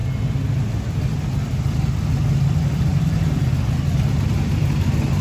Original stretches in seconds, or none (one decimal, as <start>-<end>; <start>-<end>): 0.0-2.9; 3.5-5.2

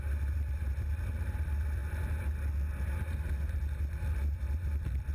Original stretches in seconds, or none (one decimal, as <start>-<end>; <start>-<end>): 1.8-4.1

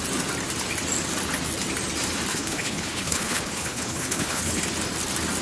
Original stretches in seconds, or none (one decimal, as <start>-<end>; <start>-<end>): 0.0-2.3; 4.6-5.4

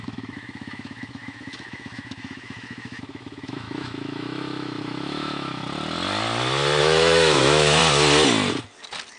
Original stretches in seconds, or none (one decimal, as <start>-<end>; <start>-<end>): 5.6-6.8; 7.8-9.2

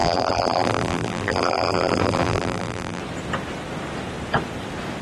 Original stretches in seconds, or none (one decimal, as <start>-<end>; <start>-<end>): 3.0-5.0